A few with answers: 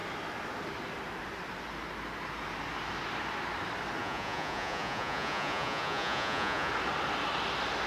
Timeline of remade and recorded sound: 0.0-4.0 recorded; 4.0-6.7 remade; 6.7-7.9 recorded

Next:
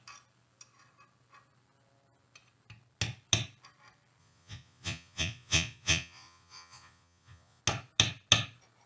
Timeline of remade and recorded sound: 0.0-4.2 recorded; 4.2-7.6 remade; 7.6-8.9 recorded

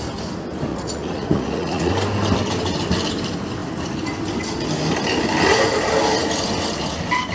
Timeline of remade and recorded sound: 0.0-0.7 recorded; 0.7-1.9 remade; 1.9-7.3 recorded